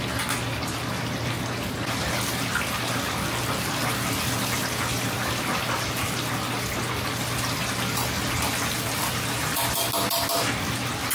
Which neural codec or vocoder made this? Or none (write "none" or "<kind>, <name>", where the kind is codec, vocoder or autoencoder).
none